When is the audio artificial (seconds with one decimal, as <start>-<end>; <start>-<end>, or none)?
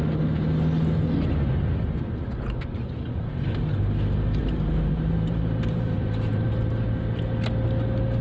4.4-6.5